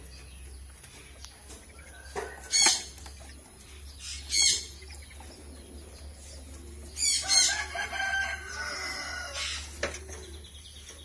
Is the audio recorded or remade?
recorded